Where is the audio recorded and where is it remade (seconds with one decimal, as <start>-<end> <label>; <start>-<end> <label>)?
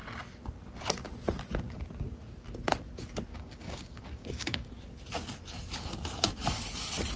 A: 0.0-3.3 recorded; 3.3-4.7 remade; 4.7-7.2 recorded